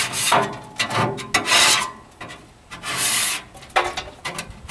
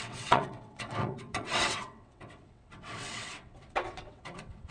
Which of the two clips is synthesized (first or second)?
second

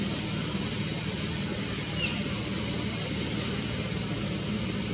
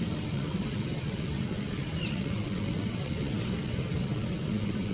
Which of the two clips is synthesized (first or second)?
second